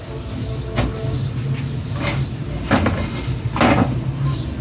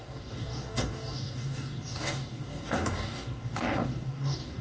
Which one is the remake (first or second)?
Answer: second